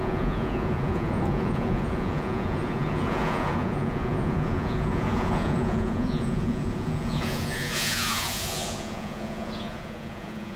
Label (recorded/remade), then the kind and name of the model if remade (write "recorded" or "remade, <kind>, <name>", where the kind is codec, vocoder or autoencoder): remade, vocoder, Vocos